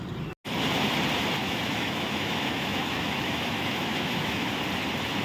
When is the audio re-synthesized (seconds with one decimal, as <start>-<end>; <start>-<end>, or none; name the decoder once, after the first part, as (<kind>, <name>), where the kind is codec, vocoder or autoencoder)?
1.4-4.5 (autoencoder, DAC-VAE)